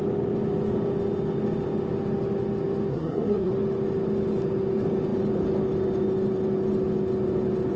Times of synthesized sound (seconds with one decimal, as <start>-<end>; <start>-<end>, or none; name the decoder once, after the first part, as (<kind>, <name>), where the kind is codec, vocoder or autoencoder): 2.9-3.5 (codec, SNAC)

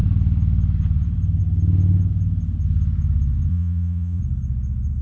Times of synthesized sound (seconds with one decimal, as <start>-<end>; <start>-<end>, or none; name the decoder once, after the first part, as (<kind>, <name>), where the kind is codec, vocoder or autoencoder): 3.5-4.2 (vocoder, Vocos)

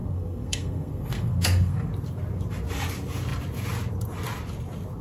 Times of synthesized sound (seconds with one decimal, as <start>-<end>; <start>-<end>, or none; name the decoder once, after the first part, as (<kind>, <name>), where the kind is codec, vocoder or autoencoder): 0.0-1.9 (codec, SNAC)

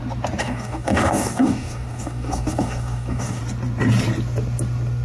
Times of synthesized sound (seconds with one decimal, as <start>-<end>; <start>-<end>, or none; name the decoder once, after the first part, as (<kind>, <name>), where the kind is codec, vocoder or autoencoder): 0.4-3.4 (codec, DAC)

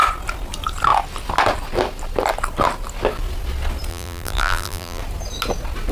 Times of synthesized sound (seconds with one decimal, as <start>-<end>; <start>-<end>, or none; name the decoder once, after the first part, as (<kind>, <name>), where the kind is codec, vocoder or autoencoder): 3.9-5.0 (vocoder, BigVGAN v2)

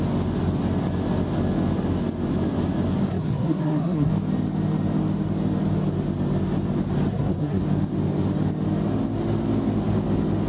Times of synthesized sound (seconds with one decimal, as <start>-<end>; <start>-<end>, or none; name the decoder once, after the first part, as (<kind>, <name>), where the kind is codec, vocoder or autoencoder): 3.1-4.1 (codec, SNAC); 7.1-7.6

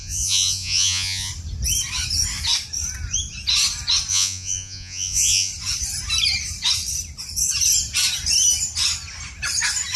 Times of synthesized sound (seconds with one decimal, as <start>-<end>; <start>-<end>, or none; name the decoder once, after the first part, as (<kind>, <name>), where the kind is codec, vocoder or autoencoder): 0.0-1.3 (vocoder, Vocos); 4.1-5.5